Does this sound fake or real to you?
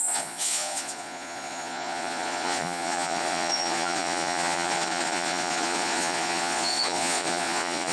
fake